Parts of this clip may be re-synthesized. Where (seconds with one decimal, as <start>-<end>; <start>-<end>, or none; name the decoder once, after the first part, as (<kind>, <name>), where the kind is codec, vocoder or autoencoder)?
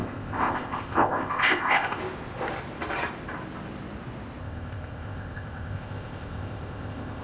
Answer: 0.0-2.0 (codec, ZipCodec); 4.4-7.2